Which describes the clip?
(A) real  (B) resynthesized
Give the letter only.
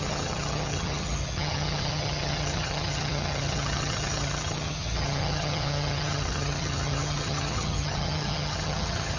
B